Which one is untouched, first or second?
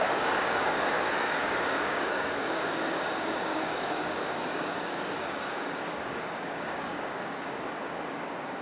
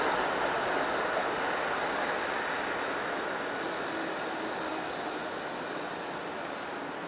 second